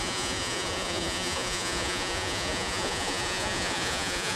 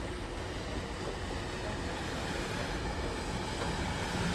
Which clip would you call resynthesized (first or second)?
first